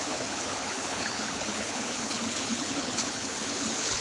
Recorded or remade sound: remade